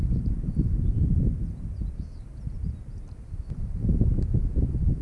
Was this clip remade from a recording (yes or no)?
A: no